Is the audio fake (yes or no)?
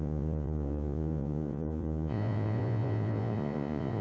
yes